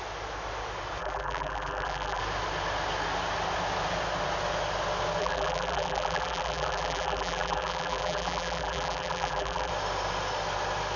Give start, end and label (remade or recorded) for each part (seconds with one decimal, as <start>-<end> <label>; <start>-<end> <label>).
0.0-1.0 recorded; 1.0-2.2 remade; 2.2-5.2 recorded; 5.2-9.7 remade; 9.7-11.0 recorded